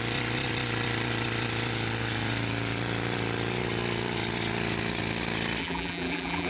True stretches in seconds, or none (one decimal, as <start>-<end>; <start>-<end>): 0.0-5.6

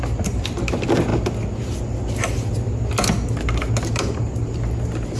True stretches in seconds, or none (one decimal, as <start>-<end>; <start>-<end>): 0.0-5.2

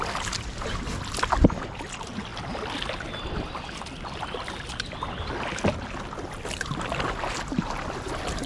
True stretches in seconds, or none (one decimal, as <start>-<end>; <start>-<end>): 0.0-8.5